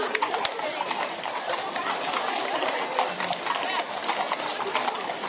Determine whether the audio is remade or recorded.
recorded